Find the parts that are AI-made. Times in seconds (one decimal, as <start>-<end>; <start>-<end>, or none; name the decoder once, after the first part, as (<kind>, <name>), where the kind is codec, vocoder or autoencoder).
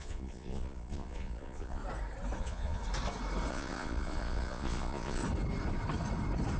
0.0-1.8 (vocoder, Vocos); 2.4-2.8; 3.5-5.2